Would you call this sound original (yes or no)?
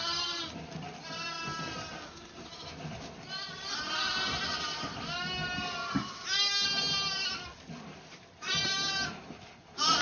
yes